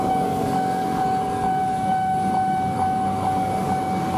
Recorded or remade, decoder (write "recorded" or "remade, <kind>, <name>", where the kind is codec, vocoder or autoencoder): remade, codec, DAC